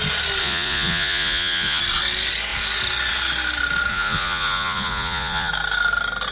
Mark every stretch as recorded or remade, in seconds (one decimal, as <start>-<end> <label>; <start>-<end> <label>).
0.0-0.4 recorded; 0.4-1.8 remade; 1.8-3.9 recorded; 3.9-5.5 remade; 5.5-6.3 recorded